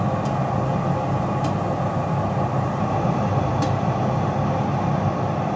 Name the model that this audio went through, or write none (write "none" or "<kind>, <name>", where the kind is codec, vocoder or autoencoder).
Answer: none